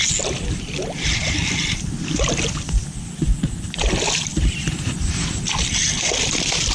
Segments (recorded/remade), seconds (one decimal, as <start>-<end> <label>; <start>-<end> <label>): 0.0-2.6 remade; 2.6-4.3 recorded; 4.3-6.1 remade; 6.1-6.7 recorded